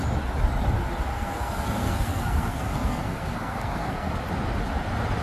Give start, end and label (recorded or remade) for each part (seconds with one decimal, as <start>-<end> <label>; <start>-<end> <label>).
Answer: 0.0-1.1 recorded; 1.1-4.1 remade; 4.1-5.2 recorded